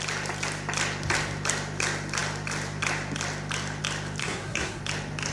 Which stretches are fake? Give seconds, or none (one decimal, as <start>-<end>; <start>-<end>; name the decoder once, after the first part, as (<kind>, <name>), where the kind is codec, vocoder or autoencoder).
4.2-4.8 (codec, SNAC)